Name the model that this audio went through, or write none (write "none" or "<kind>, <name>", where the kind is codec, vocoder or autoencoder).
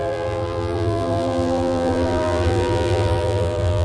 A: vocoder, BigVGAN v2